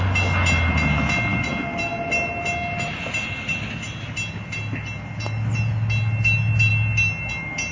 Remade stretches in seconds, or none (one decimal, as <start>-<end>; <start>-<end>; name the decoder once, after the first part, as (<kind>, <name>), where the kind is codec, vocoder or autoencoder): none